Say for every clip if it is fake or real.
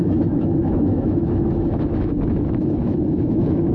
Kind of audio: fake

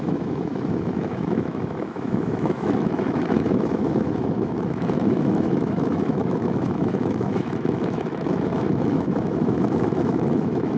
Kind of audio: fake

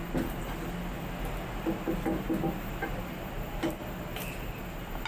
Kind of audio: real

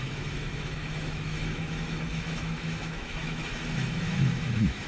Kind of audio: fake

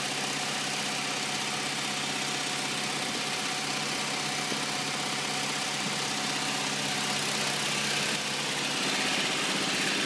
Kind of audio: real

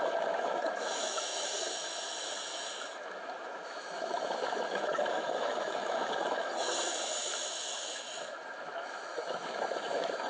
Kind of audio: fake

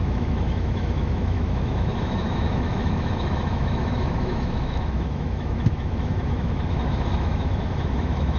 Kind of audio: fake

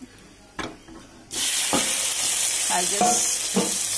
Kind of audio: real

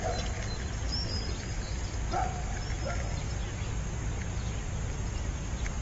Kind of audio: real